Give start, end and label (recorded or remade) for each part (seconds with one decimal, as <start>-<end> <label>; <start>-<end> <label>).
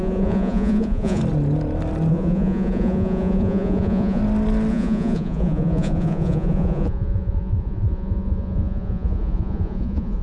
0.0-1.2 remade; 1.2-2.1 recorded; 2.1-4.2 remade; 4.2-4.7 recorded; 4.7-10.2 remade